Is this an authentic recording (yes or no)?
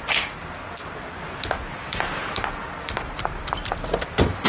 yes